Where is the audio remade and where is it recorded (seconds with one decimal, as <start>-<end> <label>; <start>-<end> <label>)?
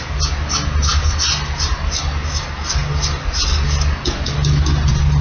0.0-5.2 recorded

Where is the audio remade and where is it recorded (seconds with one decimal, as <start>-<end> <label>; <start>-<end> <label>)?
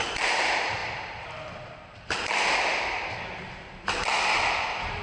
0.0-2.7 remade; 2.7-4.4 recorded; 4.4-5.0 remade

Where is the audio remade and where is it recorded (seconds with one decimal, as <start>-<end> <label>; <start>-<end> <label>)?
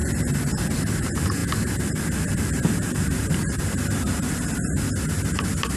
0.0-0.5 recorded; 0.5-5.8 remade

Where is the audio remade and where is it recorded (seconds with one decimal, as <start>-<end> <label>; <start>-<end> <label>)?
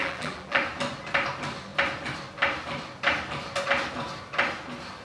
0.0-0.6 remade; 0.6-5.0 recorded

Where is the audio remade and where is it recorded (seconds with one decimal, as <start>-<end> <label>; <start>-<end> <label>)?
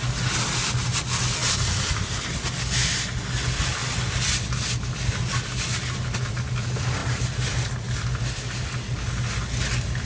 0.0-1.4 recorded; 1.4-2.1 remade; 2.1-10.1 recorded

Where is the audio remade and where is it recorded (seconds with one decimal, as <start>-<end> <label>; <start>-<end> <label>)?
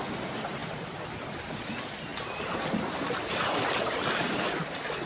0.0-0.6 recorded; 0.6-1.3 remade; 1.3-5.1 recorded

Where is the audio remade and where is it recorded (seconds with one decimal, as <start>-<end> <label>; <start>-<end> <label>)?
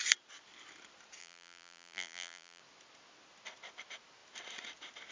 0.0-1.2 recorded; 1.2-2.6 remade; 2.6-5.1 recorded